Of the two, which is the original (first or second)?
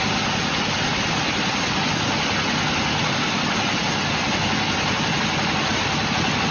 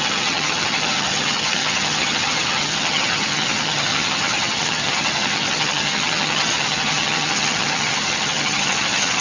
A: first